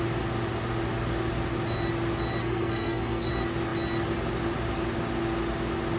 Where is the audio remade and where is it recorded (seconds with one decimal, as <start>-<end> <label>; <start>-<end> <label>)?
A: 0.0-2.4 recorded; 2.4-3.3 remade; 3.3-6.0 recorded